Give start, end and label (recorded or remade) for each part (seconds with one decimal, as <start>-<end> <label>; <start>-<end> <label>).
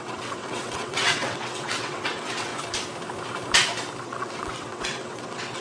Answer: 0.0-2.5 remade; 2.5-4.0 recorded; 4.0-5.6 remade